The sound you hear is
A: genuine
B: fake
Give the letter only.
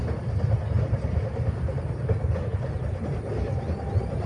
A